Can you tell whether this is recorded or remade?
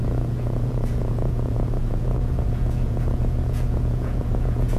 remade